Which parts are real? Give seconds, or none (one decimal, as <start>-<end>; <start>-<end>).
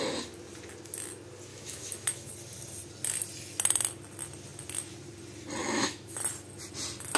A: 0.0-1.5; 2.3-5.6; 6.2-7.2